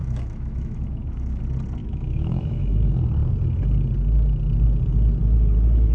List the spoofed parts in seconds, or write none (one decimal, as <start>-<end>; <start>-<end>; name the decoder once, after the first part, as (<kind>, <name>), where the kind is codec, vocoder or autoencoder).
0.0-1.4 (autoencoder, DAC-VAE); 1.8-2.8